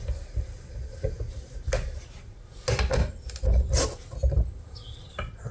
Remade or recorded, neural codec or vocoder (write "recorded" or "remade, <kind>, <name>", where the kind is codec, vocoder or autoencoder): recorded